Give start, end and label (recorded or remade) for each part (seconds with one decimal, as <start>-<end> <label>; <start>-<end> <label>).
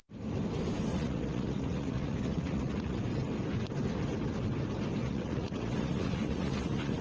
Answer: 0.0-0.9 recorded; 0.9-3.0 remade; 3.0-5.0 recorded; 5.0-7.0 remade